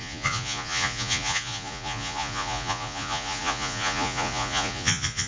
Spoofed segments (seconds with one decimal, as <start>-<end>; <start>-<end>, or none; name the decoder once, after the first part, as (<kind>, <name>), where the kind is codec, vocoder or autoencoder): 0.0-5.3 (vocoder, Vocos)